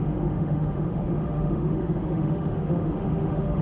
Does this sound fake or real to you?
fake